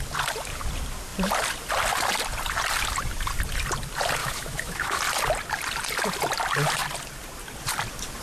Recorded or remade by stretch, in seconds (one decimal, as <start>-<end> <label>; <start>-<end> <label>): 0.0-4.2 recorded; 4.2-5.0 remade; 5.0-8.2 recorded